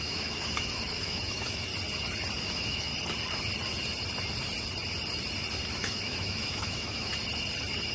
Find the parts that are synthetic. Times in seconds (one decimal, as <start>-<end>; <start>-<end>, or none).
0.0-1.7; 2.4-2.9; 5.7-7.1